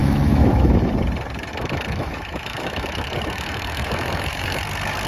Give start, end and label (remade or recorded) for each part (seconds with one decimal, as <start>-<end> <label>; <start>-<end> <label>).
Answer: 0.0-0.9 remade; 0.9-1.5 recorded; 1.5-4.6 remade; 4.6-5.1 recorded